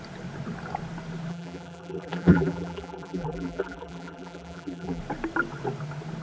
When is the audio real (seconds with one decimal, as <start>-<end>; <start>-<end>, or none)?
0.0-1.3; 5.0-6.2

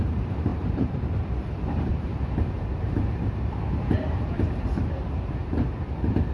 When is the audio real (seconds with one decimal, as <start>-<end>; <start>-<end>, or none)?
5.4-6.3

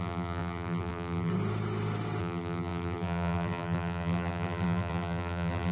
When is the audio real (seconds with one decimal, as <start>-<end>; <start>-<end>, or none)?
1.3-2.2

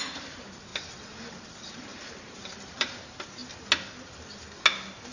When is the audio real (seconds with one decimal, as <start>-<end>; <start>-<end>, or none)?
0.7-1.5; 3.4-5.1

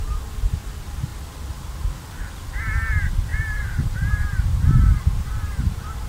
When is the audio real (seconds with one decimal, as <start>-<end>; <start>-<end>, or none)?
0.0-3.3

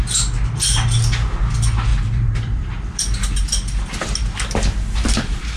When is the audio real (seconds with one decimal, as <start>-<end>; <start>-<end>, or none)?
0.0-1.9; 2.7-5.6